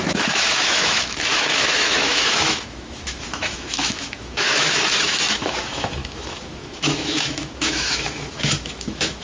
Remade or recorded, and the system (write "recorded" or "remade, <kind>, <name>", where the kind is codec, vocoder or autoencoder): remade, autoencoder, DAC-VAE